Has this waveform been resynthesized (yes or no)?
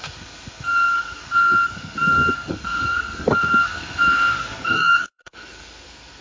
yes